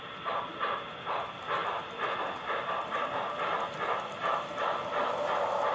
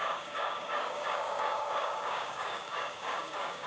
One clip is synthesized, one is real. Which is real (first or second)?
first